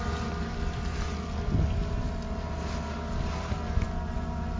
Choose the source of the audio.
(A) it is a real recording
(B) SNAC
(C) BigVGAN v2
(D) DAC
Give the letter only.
A